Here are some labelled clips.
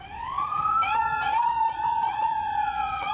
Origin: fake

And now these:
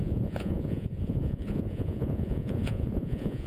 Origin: fake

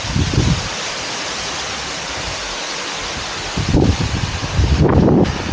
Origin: real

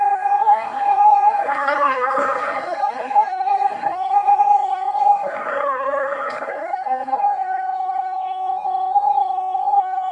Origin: fake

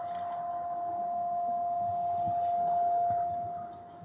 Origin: real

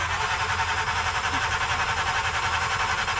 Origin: real